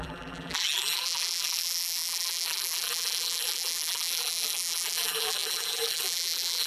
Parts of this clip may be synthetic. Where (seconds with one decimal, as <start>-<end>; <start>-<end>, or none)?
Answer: 0.0-6.7